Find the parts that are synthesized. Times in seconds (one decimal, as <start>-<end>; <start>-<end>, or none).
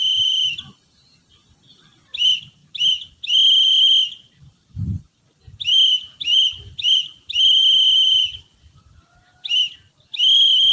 none